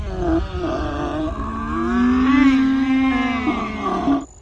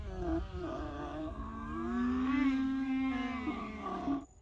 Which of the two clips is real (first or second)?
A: first